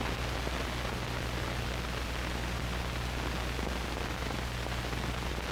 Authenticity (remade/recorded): recorded